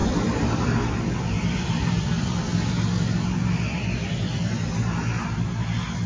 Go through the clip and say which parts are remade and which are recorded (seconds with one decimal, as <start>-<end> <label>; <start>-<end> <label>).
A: 0.0-2.7 remade; 2.7-3.7 recorded; 3.7-5.5 remade; 5.5-6.1 recorded